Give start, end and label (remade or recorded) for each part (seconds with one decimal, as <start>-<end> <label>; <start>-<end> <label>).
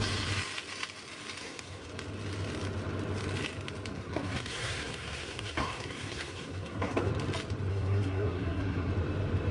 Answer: 0.0-1.4 recorded; 1.4-1.9 remade; 1.9-3.9 recorded; 3.9-7.1 remade; 7.1-7.7 recorded; 7.7-8.9 remade; 8.9-9.5 recorded